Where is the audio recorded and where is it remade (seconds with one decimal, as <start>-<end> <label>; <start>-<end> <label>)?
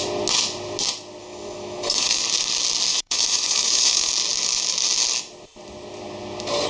0.0-1.2 recorded; 1.2-2.2 remade; 2.2-2.9 recorded; 2.9-4.1 remade; 4.1-6.7 recorded